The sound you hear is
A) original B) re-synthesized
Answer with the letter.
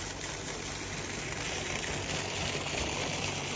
A